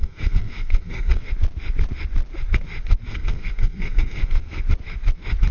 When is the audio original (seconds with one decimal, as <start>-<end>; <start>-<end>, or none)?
1.3-3.1; 4.6-5.5